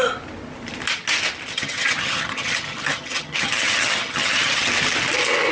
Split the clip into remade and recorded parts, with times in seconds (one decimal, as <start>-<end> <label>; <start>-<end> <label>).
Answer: 0.0-1.5 recorded; 1.5-4.7 remade; 4.7-5.5 recorded

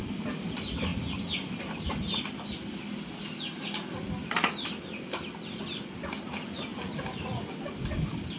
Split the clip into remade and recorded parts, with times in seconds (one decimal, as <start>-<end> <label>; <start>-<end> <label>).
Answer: 0.0-8.4 recorded

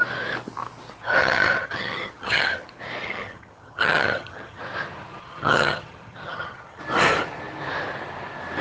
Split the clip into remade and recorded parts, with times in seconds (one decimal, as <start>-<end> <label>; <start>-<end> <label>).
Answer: 0.0-1.2 recorded; 1.2-2.6 remade; 2.6-3.0 recorded; 3.0-4.6 remade; 4.6-5.2 recorded; 5.2-6.8 remade; 6.8-8.6 recorded

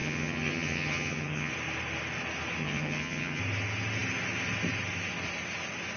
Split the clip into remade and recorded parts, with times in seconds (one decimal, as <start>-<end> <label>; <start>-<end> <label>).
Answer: 0.0-1.5 remade; 1.5-2.6 recorded; 2.6-3.4 remade; 3.4-6.0 recorded

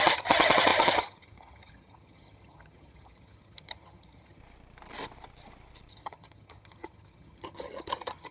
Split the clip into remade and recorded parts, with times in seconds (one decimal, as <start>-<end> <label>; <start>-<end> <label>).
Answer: 0.0-4.4 remade; 4.4-5.9 recorded; 5.9-8.3 remade